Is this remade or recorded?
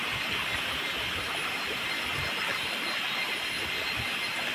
recorded